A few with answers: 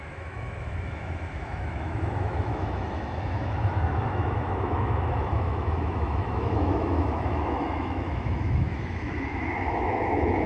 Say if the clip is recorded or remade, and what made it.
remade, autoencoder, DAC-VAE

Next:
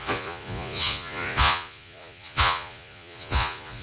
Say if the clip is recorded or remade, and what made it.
remade, vocoder, Vocos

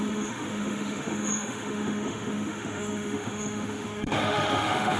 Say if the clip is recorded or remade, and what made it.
remade, autoencoder, DAC-VAE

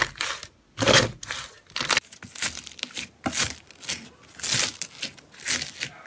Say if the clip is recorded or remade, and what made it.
recorded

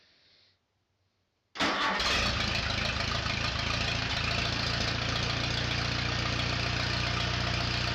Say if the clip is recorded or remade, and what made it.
recorded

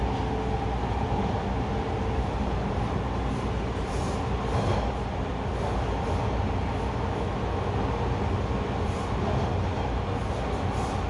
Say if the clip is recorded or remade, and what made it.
recorded